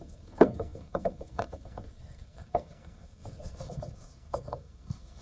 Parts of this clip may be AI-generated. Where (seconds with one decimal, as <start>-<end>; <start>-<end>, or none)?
0.0-5.2